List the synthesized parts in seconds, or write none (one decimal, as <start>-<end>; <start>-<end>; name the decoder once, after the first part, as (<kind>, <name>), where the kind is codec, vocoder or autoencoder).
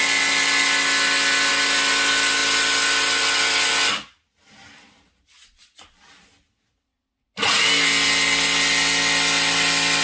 none